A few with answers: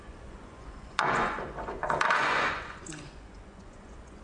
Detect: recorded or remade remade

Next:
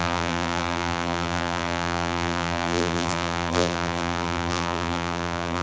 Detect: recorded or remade remade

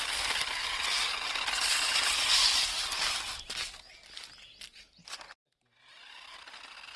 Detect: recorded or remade recorded